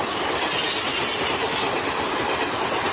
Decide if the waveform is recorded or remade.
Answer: recorded